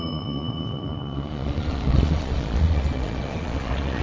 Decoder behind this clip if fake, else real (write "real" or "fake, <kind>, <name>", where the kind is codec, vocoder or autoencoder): fake, vocoder, Vocos